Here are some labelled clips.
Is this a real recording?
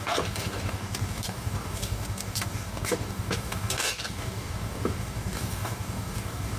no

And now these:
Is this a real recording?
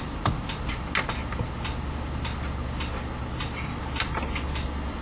yes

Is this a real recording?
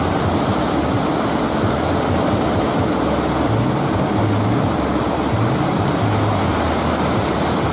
yes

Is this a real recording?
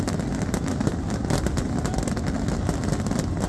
yes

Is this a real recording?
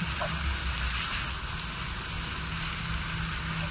yes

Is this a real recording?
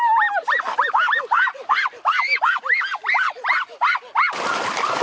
yes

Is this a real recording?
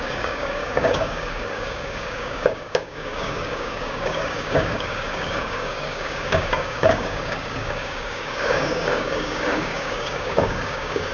no